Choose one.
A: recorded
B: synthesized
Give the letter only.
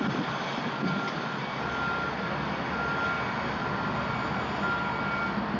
A